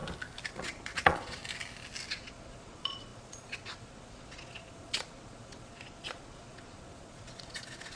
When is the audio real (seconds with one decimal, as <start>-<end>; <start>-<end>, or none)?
0.0-0.5; 1.4-2.1